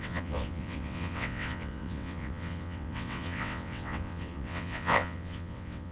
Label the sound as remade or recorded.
remade